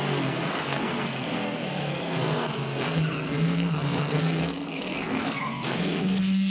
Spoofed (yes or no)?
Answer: yes